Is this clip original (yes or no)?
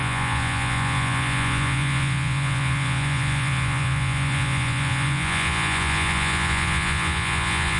no